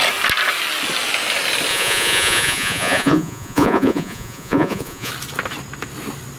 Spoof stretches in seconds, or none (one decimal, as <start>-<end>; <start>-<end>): 1.7-5.1